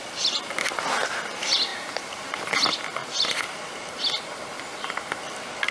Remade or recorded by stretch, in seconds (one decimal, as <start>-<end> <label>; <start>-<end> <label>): 0.0-1.7 recorded; 1.7-2.5 remade; 2.5-5.7 recorded

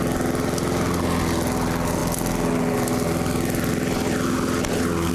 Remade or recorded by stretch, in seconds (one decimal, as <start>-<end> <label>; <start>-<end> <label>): 0.0-5.1 recorded

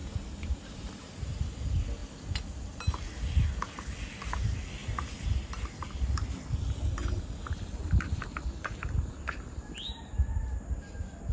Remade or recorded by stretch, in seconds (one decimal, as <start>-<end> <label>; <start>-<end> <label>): 0.0-1.4 remade; 1.4-4.8 recorded; 4.8-6.4 remade; 6.4-11.3 recorded

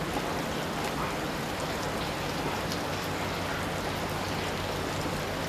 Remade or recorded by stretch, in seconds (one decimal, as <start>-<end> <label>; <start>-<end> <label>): 0.0-5.5 recorded

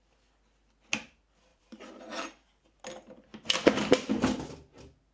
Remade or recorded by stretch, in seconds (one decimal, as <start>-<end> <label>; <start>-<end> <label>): 0.0-1.5 recorded; 1.5-2.8 remade; 2.8-5.1 recorded

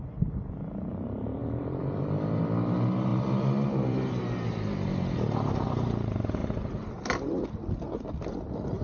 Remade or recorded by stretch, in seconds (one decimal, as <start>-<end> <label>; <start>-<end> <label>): 0.0-1.4 recorded; 1.4-2.4 remade; 2.4-3.1 recorded; 3.1-4.2 remade; 4.2-8.8 recorded

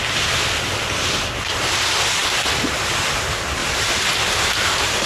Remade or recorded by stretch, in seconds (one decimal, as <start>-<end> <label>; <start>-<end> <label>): 0.0-3.6 recorded; 3.6-4.4 remade; 4.4-5.1 recorded